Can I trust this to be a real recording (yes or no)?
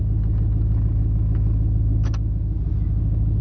yes